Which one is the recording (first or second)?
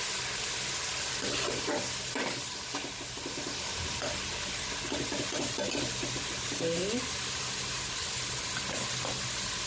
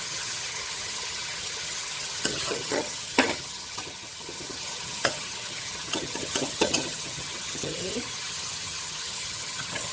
first